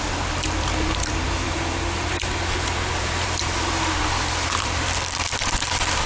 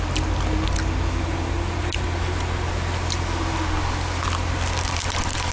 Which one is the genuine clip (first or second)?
second